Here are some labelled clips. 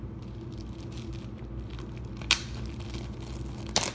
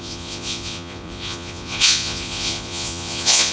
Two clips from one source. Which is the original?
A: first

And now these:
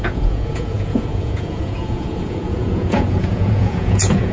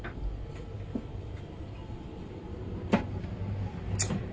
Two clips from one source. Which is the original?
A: second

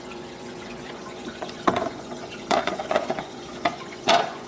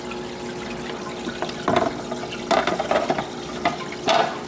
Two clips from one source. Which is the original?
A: second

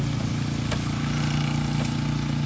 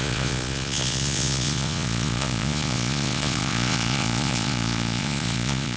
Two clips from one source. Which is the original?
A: first